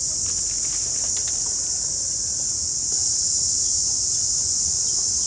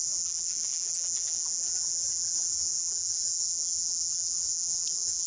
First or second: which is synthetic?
second